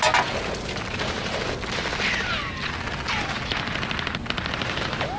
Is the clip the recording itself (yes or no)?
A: yes